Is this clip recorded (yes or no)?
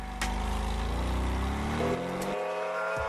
yes